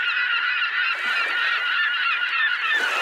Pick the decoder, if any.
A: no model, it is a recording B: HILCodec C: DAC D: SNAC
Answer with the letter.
A